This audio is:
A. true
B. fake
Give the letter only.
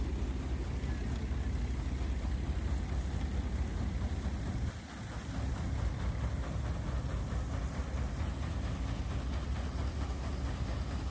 A